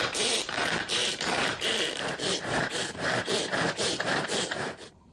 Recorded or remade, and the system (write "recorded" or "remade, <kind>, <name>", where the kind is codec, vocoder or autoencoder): remade, vocoder, BigVGAN v2